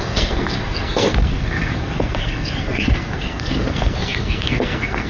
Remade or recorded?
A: remade